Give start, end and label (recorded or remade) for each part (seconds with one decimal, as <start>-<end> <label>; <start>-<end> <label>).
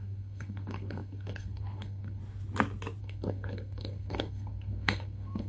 0.0-2.2 remade; 2.2-3.0 recorded; 3.0-5.5 remade